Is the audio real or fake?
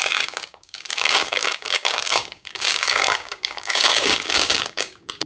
fake